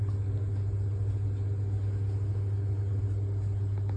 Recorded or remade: recorded